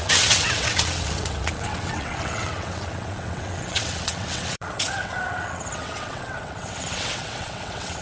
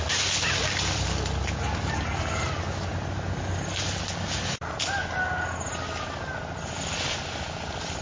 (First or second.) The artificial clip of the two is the first